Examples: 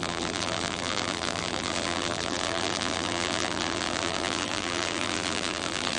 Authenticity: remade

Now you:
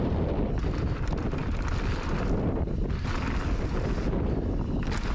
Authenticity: recorded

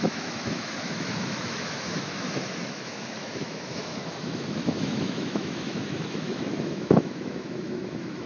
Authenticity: remade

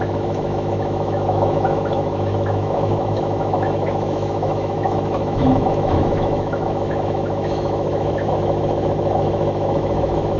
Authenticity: remade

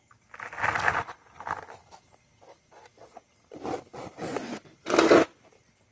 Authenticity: recorded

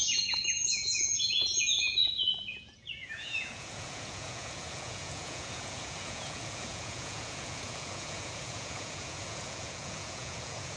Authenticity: remade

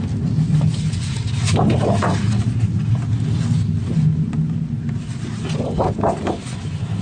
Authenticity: recorded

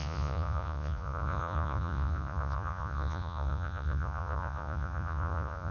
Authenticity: remade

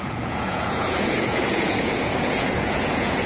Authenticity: remade